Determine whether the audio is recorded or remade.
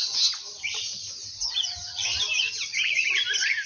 recorded